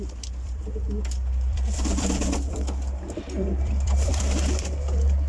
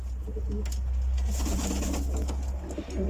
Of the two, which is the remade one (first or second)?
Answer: first